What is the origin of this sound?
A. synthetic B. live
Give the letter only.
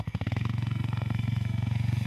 A